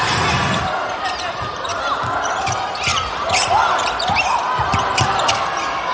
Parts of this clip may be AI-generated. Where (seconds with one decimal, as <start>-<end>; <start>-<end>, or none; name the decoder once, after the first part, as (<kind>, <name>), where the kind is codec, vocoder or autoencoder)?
none